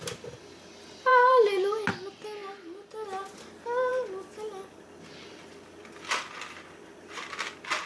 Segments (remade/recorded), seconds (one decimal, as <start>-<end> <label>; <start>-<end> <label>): 0.0-1.1 recorded; 1.1-1.9 remade; 1.9-2.4 recorded; 2.4-3.4 remade; 3.4-3.9 recorded; 3.9-7.9 remade